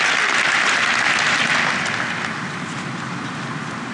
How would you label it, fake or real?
real